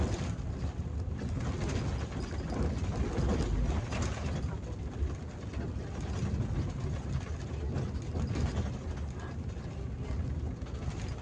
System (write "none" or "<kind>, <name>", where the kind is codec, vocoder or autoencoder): none